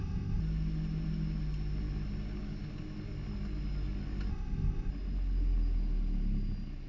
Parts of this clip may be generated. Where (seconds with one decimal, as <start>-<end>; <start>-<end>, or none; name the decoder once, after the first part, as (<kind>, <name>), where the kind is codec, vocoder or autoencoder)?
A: 0.0-0.4 (codec, ZipCodec); 4.3-4.9